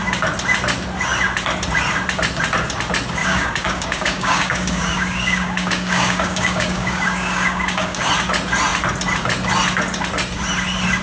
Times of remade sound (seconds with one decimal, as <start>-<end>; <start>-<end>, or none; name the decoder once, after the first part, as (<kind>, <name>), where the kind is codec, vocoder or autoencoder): 3.2-8.1 (codec, DAC)

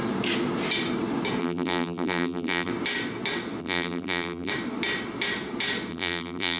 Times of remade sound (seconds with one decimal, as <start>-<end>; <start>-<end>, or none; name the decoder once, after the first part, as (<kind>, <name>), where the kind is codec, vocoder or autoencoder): 1.4-2.7 (vocoder, BigVGAN v2); 3.6-4.5; 5.9-6.6

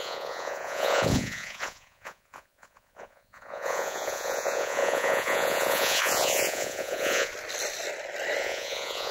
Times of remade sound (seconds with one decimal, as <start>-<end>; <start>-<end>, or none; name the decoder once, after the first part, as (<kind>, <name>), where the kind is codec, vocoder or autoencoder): 0.0-7.3 (vocoder, Vocos); 8.4-9.1

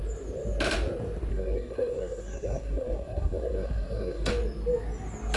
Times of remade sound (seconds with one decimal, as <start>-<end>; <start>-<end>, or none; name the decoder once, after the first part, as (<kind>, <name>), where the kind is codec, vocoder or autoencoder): 1.3-4.3 (codec, SNAC)

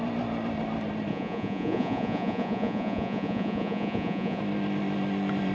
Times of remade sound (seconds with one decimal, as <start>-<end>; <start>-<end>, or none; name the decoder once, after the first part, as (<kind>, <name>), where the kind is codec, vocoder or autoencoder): 1.1-4.4 (vocoder, Vocos)

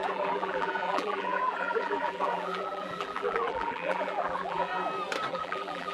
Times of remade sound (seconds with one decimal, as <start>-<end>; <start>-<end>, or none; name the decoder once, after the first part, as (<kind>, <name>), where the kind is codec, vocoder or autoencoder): 0.0-4.7 (vocoder, BigVGAN v2); 5.3-5.9

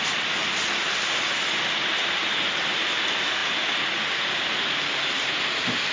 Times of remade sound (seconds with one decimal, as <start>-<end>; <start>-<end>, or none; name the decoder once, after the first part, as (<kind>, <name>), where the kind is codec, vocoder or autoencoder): none